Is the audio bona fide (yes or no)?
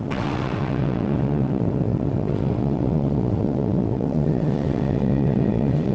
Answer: no